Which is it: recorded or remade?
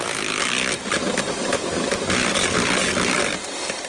recorded